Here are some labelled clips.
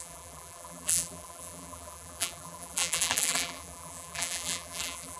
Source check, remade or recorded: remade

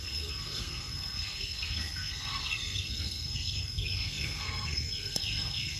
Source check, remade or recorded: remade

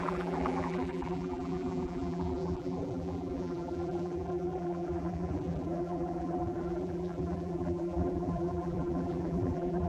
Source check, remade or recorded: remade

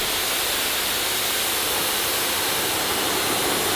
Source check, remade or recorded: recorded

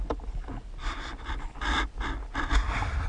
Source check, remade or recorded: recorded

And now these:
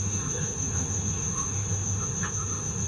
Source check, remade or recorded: remade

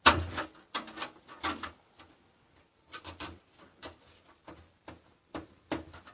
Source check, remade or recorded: recorded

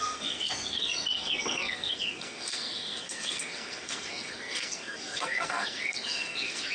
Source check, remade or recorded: remade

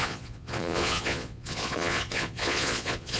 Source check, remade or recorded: remade